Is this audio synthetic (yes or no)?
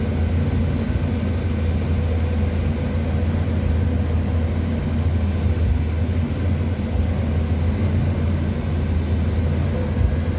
no